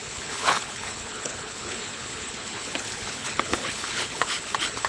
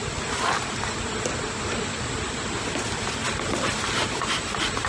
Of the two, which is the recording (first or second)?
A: second